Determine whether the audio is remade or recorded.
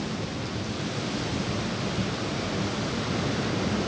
recorded